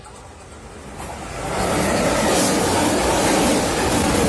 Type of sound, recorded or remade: recorded